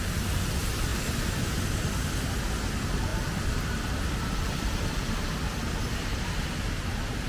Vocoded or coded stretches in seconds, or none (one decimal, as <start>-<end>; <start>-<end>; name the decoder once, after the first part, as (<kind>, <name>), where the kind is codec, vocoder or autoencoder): 0.9-1.6 (vocoder, BigVGAN v2); 3.1-6.2